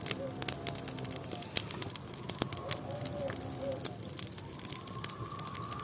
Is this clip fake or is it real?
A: real